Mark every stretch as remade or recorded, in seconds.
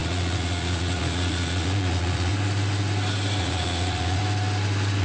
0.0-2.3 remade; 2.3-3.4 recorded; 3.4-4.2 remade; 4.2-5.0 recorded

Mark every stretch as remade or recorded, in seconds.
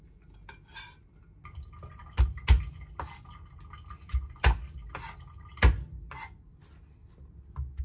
0.0-7.8 recorded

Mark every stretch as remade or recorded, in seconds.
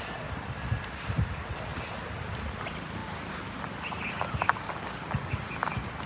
0.0-6.1 recorded